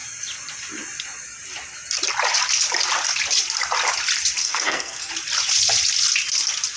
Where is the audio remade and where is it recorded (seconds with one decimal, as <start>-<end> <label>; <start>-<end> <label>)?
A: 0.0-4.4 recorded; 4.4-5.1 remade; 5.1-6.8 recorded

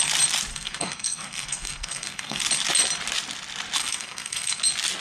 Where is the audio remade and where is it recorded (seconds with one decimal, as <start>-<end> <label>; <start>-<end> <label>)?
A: 0.0-0.5 recorded; 0.5-2.4 remade; 2.4-3.8 recorded; 3.8-4.6 remade; 4.6-5.0 recorded

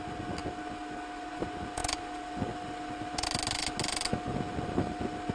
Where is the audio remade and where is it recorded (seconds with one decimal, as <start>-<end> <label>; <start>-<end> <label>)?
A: 0.0-5.3 recorded

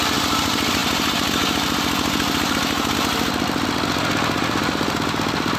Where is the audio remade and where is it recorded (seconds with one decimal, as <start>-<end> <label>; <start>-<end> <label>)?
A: 0.0-5.6 recorded